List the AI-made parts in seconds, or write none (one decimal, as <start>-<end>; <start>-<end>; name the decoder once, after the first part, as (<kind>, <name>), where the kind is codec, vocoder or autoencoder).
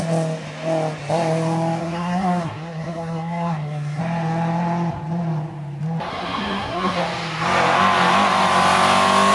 1.8-4.0 (codec, SNAC); 6.1-7.0